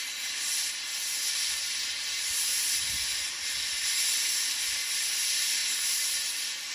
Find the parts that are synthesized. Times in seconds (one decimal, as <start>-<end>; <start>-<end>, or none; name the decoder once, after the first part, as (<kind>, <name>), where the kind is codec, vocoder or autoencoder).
none